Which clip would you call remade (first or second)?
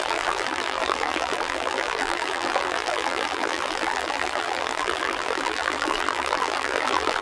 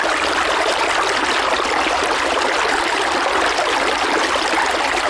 first